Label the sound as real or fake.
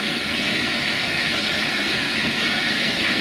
fake